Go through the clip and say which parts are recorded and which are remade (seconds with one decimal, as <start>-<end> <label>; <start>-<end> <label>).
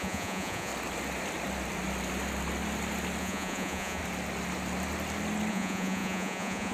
0.0-0.7 remade; 0.7-3.2 recorded; 3.2-4.0 remade; 4.0-5.5 recorded; 5.5-6.7 remade